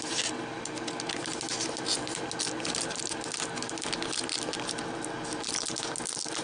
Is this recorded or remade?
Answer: recorded